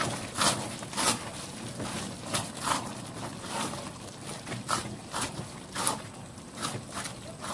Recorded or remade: recorded